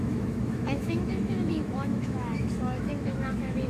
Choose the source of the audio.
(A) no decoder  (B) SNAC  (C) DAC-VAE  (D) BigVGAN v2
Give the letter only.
C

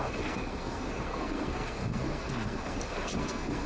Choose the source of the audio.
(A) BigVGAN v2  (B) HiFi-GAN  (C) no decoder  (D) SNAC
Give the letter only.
D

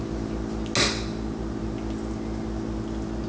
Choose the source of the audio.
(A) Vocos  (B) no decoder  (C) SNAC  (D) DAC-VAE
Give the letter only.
B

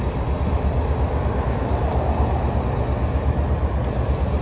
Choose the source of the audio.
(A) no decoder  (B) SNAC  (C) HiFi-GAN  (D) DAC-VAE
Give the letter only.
A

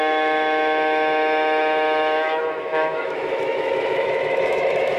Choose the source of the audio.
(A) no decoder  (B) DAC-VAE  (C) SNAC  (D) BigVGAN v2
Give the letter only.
B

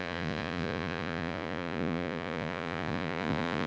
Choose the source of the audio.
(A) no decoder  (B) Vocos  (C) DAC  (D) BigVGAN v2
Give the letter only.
B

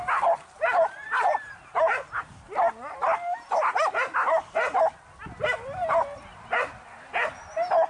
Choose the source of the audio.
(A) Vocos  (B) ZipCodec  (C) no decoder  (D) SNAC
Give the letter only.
C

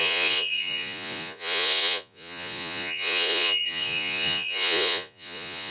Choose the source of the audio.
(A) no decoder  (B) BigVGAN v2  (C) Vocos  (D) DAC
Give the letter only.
C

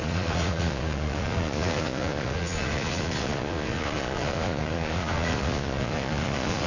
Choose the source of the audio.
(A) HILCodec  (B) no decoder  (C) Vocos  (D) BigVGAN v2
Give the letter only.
C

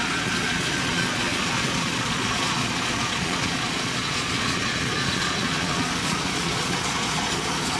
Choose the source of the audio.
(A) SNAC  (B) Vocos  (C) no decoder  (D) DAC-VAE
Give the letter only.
B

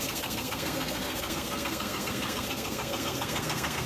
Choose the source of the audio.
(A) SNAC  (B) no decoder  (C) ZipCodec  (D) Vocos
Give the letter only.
A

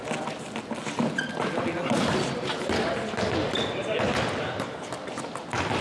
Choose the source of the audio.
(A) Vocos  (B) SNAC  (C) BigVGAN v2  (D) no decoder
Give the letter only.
D